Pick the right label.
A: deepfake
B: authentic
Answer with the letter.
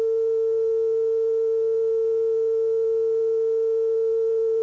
B